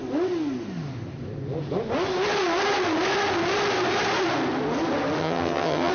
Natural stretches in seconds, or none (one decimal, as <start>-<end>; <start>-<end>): 0.0-5.2